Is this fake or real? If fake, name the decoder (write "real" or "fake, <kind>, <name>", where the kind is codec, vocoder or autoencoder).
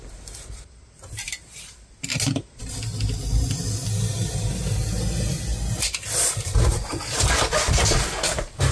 real